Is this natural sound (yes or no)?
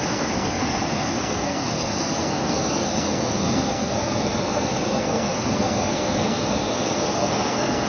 no